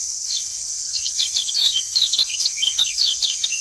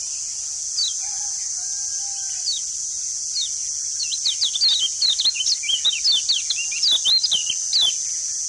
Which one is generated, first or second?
first